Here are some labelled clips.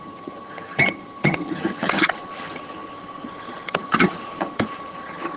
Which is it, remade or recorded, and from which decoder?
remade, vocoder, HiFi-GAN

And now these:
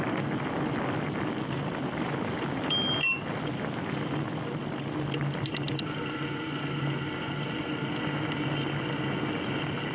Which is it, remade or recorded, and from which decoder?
recorded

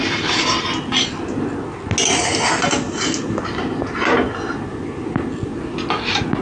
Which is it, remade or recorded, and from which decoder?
recorded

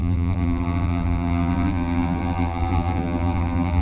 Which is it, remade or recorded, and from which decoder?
remade, vocoder, BigVGAN v2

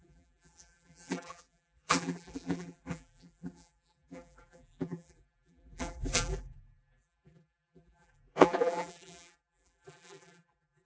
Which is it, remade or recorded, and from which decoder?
remade, vocoder, BigVGAN v2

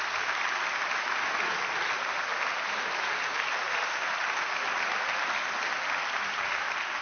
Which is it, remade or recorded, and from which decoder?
recorded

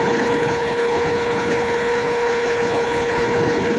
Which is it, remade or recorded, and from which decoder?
remade, codec, HILCodec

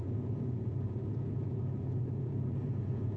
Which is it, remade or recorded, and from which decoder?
remade, vocoder, Vocos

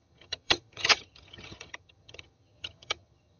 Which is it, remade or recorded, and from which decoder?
remade, vocoder, HiFi-GAN